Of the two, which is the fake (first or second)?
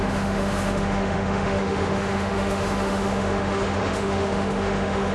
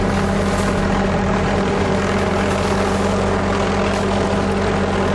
first